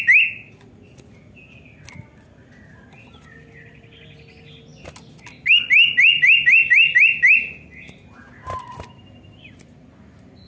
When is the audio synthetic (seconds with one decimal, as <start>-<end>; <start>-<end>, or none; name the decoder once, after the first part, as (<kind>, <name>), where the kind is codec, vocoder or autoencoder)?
none